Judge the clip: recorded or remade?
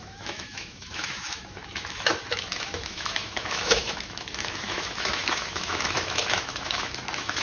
remade